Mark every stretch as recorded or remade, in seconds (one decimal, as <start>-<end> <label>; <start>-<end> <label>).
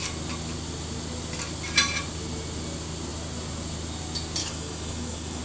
0.0-4.4 recorded; 4.4-5.4 remade